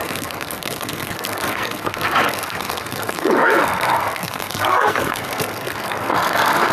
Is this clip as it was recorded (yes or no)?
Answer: no